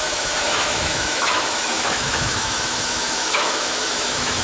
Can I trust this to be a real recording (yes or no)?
no